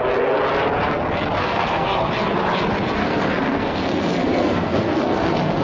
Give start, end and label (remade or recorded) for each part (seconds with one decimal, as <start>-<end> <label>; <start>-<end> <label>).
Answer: 0.0-1.4 recorded; 1.4-2.1 remade; 2.1-3.0 recorded; 3.0-5.6 remade